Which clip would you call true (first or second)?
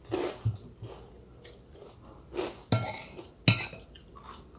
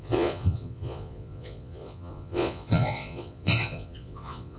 first